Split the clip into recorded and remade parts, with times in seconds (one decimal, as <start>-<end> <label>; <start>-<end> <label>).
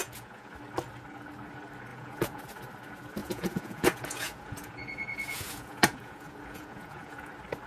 0.0-0.5 remade; 0.5-1.9 recorded; 1.9-2.4 remade; 2.4-3.2 recorded; 3.2-7.3 remade; 7.3-7.7 recorded